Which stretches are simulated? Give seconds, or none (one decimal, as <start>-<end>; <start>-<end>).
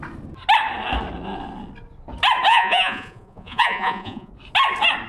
2.5-4.3